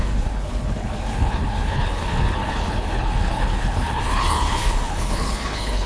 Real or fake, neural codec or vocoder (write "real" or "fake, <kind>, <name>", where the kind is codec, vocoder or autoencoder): fake, codec, HILCodec